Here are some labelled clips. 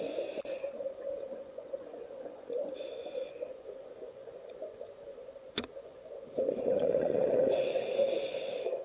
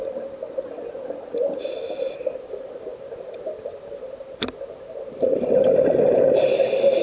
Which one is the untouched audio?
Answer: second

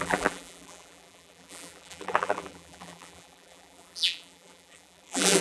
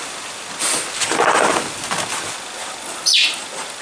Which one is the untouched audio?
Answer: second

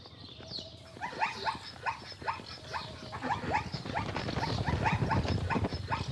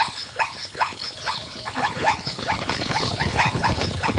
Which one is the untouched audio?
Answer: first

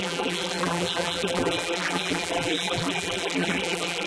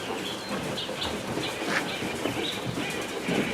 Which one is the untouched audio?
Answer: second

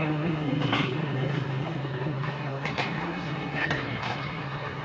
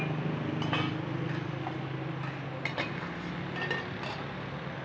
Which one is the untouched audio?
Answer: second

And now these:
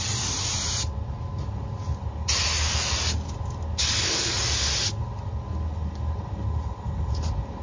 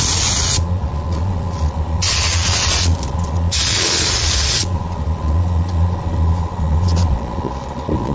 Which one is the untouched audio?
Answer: first